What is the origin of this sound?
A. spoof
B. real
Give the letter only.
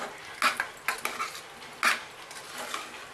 B